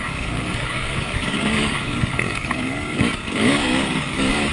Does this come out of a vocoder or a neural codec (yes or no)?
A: yes